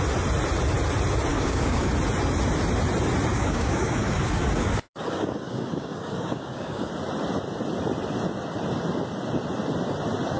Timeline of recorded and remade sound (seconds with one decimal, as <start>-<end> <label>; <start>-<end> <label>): 0.0-1.3 recorded; 1.3-1.9 remade; 1.9-3.3 recorded; 3.3-6.9 remade; 6.9-10.4 recorded